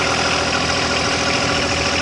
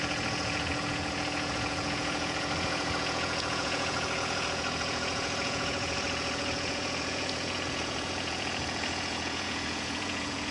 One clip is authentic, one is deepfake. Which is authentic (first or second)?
first